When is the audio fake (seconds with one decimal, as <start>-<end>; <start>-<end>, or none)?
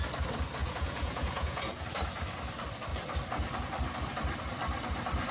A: 0.6-1.8